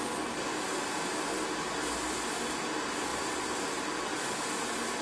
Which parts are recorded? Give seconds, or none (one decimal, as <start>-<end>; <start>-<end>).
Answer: 0.0-5.0